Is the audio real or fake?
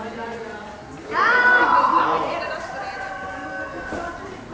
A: real